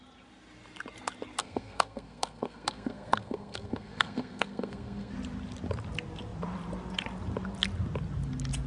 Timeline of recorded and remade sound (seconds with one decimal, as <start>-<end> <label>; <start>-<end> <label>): 0.0-1.4 recorded; 1.4-5.1 remade; 5.1-8.7 recorded